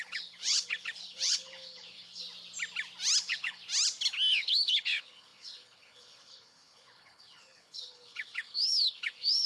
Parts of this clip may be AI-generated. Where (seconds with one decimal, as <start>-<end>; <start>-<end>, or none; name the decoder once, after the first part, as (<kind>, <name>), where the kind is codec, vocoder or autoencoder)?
0.0-2.2 (codec, HILCodec); 3.2-3.6; 4.3-9.5